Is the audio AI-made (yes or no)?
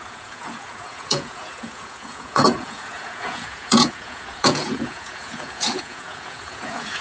yes